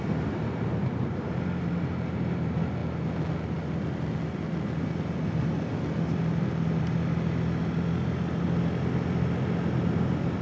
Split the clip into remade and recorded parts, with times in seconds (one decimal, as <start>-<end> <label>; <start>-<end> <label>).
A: 0.0-10.4 recorded